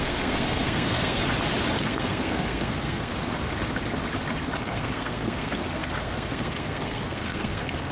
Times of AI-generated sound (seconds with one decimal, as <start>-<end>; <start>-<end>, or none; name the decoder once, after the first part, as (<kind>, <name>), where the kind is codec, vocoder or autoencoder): 0.0-1.2 (codec, SNAC); 1.8-3.1; 4.6-7.9